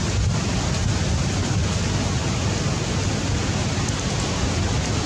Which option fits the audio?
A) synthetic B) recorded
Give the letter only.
B